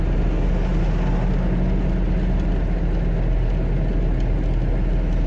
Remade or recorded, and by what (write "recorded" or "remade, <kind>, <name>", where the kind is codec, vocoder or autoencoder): recorded